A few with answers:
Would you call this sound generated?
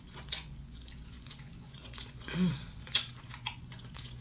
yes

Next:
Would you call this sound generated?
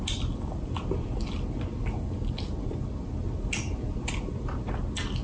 no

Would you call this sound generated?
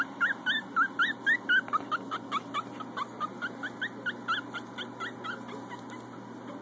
no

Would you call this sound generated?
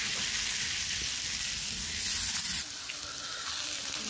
no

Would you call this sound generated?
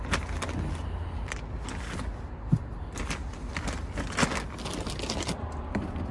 no